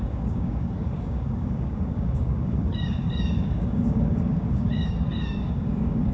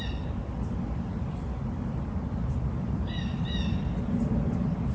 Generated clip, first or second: first